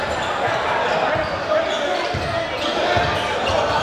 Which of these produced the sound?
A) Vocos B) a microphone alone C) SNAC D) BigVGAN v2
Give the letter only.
B